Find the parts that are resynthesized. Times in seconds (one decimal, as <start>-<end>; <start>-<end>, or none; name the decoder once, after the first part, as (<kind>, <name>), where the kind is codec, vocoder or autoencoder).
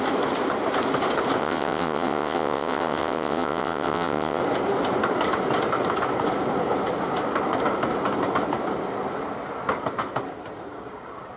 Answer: 1.4-4.4 (vocoder, WaveNeXt)